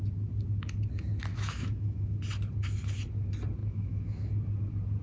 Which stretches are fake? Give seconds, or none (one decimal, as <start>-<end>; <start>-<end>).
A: 1.3-2.1; 3.6-4.3

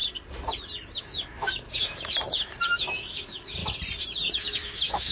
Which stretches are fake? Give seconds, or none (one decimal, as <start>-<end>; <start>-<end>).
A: 1.0-3.6; 4.2-5.1

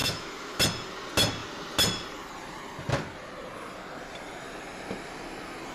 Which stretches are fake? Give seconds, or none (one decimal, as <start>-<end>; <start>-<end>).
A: 0.0-0.6

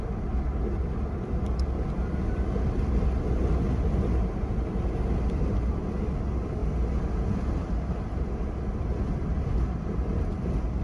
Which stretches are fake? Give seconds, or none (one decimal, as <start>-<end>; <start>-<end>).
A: none

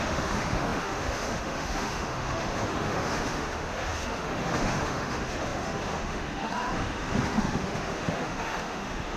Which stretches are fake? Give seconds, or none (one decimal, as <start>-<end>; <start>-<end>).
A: 0.0-9.2

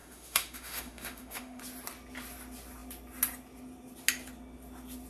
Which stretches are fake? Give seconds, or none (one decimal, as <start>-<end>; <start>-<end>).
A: 0.0-1.6

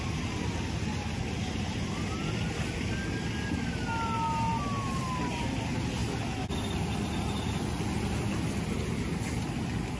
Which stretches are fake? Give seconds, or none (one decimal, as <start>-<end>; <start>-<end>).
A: none